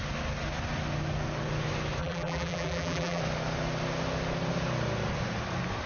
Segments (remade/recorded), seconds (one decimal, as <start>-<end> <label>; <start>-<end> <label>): 0.0-2.0 recorded; 2.0-3.2 remade; 3.2-5.9 recorded